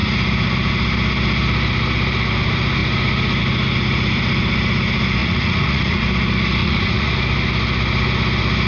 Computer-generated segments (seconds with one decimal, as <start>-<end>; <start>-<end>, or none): 5.2-6.0; 6.6-7.1